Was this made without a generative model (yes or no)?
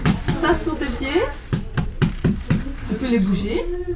yes